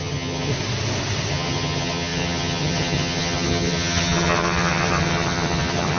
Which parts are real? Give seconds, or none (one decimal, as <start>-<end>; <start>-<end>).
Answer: 0.5-1.3